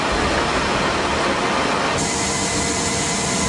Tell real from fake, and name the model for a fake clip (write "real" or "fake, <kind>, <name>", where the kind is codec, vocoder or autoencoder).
real